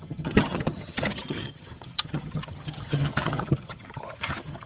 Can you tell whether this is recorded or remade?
remade